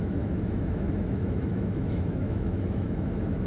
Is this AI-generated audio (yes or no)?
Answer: yes